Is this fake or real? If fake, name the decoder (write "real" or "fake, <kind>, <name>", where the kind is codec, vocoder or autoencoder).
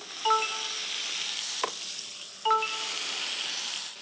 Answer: real